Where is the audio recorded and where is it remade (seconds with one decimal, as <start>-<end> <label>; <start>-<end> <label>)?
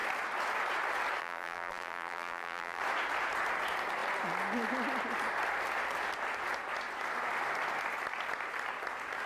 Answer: 0.0-1.2 recorded; 1.2-2.8 remade; 2.8-9.3 recorded